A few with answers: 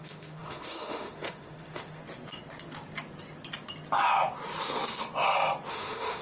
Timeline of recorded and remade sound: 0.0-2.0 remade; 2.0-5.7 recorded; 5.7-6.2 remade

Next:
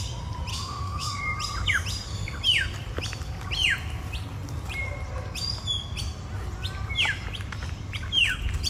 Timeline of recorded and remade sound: 0.0-0.5 recorded; 0.5-1.2 remade; 1.2-8.7 recorded

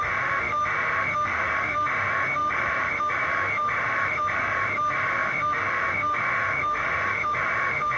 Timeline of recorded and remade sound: 0.0-8.0 remade

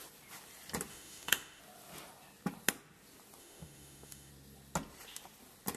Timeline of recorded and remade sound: 0.0-0.9 recorded; 0.9-1.6 remade; 1.6-3.4 recorded; 3.4-4.3 remade; 4.3-5.8 recorded